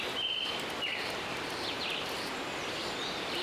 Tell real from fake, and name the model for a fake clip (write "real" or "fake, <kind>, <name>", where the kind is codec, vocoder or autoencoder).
fake, vocoder, BigVGAN v2